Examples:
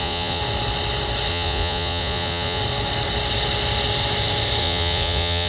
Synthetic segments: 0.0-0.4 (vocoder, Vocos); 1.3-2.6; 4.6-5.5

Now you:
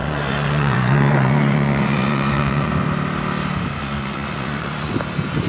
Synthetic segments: 0.0-2.7 (vocoder, Vocos); 3.8-4.9

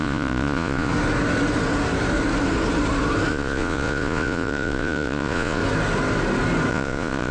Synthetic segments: 0.0-0.9 (vocoder, Vocos); 3.3-5.6; 6.7-7.3